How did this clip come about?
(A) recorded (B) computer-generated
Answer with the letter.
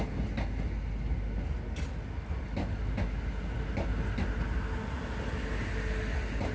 A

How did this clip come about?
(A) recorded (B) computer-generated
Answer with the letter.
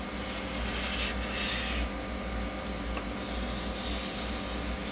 A